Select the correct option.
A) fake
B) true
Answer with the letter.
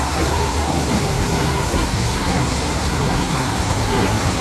A